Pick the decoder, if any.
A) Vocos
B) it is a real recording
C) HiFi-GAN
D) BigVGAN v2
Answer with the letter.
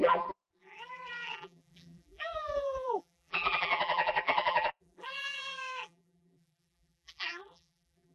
D